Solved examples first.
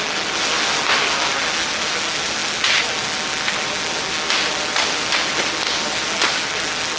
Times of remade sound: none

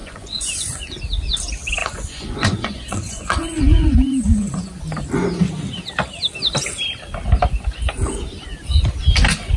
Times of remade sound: 0.0-1.0 (vocoder, Vocos); 1.8-4.8